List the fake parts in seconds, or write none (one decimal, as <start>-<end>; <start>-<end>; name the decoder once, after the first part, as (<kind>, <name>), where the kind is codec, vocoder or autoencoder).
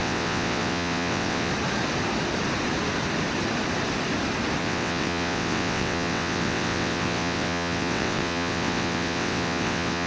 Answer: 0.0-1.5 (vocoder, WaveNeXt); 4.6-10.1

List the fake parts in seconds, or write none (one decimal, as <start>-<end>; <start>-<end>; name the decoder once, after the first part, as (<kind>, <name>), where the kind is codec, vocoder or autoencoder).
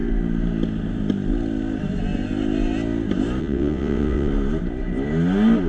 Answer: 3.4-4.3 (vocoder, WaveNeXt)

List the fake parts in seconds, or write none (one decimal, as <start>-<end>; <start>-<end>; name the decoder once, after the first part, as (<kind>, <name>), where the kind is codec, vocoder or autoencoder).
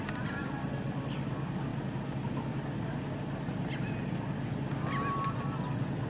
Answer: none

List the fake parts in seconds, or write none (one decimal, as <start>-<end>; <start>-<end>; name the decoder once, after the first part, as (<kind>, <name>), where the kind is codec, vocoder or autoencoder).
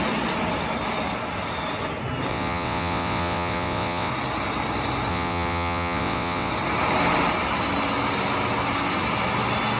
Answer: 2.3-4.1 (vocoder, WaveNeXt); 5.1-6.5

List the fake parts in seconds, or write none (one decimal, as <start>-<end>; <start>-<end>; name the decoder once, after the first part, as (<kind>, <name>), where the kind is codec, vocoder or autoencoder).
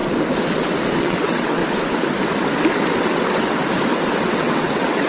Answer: 1.0-1.6 (vocoder, WaveNeXt); 3.0-3.6; 4.2-5.1